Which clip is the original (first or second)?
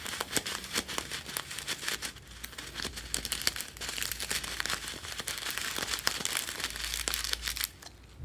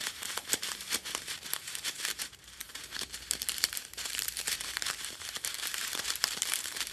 first